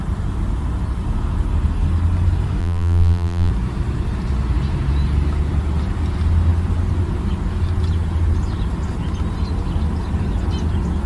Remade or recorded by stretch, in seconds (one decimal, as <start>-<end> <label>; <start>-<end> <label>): 0.0-2.6 recorded; 2.6-3.5 remade; 3.5-11.1 recorded

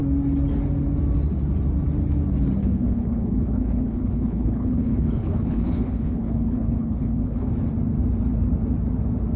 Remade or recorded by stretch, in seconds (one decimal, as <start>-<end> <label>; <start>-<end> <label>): 0.0-2.6 recorded; 2.6-7.5 remade; 7.5-9.4 recorded

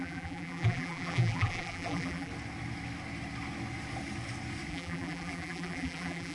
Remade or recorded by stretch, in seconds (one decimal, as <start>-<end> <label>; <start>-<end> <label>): 0.0-2.3 remade; 2.3-4.7 recorded; 4.7-6.3 remade

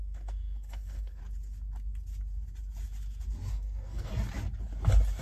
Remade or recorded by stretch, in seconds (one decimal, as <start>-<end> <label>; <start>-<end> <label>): 0.0-1.2 remade; 1.2-3.5 recorded; 3.5-4.1 remade; 4.1-5.2 recorded

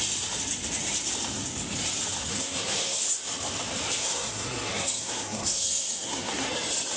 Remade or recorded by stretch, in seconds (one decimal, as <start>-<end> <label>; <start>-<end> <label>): 0.0-2.2 recorded; 2.2-3.0 remade; 3.0-4.0 recorded; 4.0-6.5 remade; 6.5-7.0 recorded

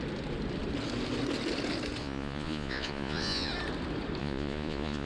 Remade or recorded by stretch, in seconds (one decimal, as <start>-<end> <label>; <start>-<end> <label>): 0.0-2.0 recorded; 2.0-3.5 remade; 3.5-4.2 recorded; 4.2-5.1 remade

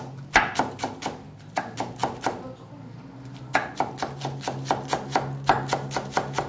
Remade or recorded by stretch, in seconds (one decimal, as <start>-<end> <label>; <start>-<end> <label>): 0.0-6.5 recorded

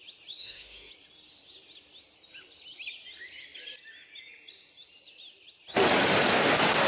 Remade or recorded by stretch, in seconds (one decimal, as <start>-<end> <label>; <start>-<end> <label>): 0.0-0.4 recorded; 0.4-0.9 remade; 0.9-6.9 recorded